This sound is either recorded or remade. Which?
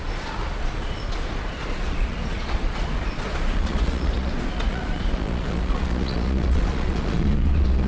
remade